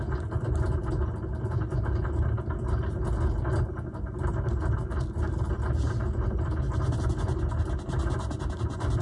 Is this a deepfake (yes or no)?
no